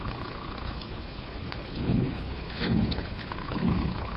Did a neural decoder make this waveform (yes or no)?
yes